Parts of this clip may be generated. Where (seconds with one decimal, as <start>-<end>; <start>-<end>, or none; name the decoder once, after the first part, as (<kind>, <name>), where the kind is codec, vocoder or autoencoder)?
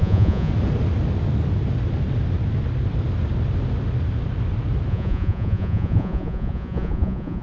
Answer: 0.0-0.5 (vocoder, Vocos); 4.9-7.4